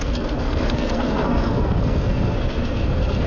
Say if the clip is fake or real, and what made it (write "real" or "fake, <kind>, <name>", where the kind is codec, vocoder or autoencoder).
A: fake, codec, SNAC